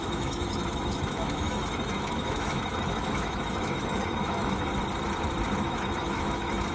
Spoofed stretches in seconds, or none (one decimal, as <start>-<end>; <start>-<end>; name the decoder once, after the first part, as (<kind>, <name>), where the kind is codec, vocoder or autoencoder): 0.0-4.7 (autoencoder, DAC-VAE); 5.6-6.7